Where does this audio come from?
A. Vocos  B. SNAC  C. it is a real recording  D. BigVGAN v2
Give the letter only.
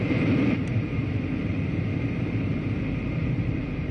D